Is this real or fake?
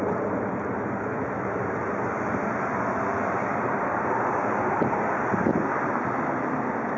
fake